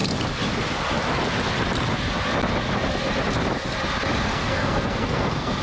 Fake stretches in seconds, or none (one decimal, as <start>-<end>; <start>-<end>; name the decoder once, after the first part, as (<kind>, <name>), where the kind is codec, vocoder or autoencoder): 4.3-5.6 (codec, SNAC)